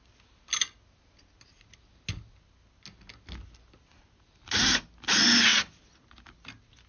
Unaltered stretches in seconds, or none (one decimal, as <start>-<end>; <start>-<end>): 0.0-6.9